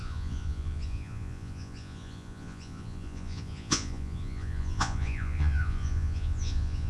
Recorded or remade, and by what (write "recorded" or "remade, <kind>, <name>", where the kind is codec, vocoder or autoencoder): remade, vocoder, Vocos